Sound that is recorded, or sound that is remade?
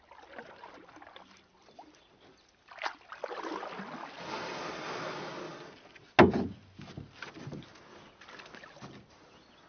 recorded